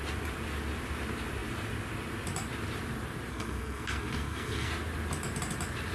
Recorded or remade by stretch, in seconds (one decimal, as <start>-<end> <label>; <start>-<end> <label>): 0.0-3.3 recorded; 3.3-4.7 remade; 4.7-5.9 recorded